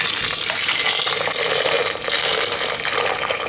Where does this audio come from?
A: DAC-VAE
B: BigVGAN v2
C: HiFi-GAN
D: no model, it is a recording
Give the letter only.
D